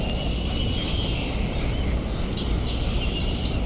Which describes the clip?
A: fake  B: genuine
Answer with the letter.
B